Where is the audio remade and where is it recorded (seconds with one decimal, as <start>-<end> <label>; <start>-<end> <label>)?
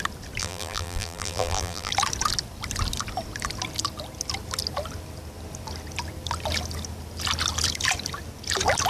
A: 0.0-0.4 recorded; 0.4-1.9 remade; 1.9-8.9 recorded